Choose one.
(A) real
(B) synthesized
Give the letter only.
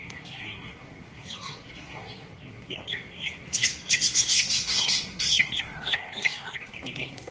B